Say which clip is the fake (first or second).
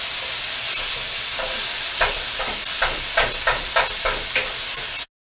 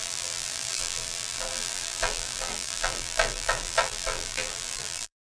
second